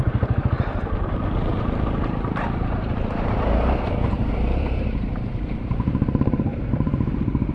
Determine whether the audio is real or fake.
fake